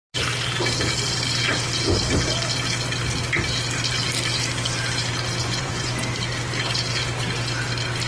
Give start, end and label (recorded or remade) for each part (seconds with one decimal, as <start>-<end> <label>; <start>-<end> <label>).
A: 0.0-5.4 recorded; 5.4-6.0 remade; 6.0-8.1 recorded